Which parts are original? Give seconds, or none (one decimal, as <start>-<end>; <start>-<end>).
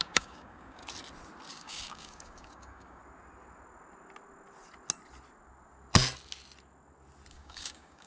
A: 0.8-1.5; 3.0-7.3